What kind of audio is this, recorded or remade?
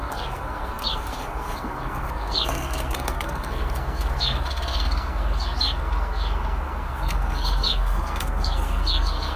remade